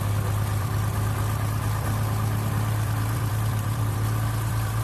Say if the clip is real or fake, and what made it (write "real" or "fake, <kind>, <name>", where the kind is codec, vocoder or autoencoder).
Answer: fake, vocoder, BigVGAN v2